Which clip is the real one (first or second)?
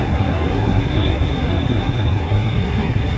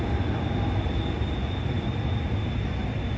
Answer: second